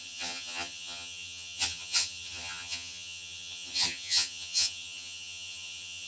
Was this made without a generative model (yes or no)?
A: no